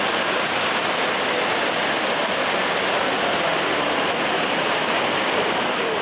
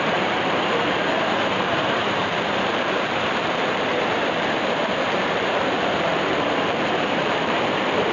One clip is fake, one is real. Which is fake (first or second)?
second